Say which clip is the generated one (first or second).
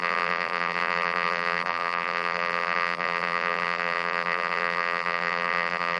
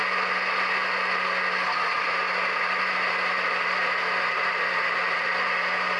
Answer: first